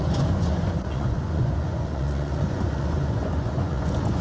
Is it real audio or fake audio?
fake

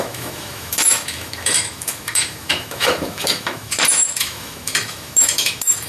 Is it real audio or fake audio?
fake